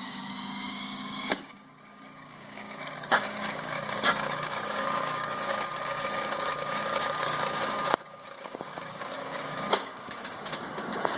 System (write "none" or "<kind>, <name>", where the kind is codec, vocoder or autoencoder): codec, DAC